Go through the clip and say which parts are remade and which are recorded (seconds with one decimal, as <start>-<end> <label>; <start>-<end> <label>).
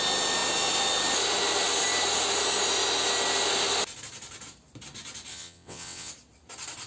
0.0-5.3 recorded; 5.3-6.1 remade; 6.1-6.9 recorded